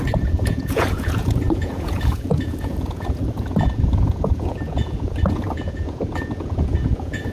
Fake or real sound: fake